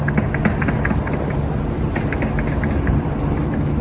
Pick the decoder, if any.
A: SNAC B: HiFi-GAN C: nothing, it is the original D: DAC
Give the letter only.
C